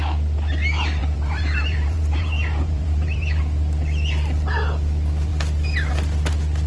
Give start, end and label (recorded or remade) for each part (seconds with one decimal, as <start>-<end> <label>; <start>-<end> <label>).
0.0-1.0 recorded; 1.0-3.4 remade; 3.4-6.7 recorded